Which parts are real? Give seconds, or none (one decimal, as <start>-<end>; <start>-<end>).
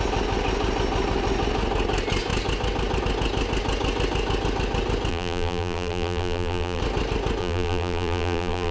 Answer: 0.0-5.1; 6.8-7.4